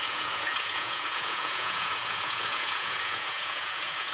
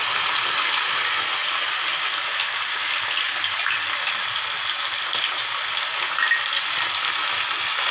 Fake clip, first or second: first